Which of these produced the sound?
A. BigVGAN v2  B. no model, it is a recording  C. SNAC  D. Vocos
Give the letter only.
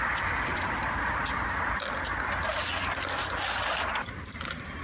B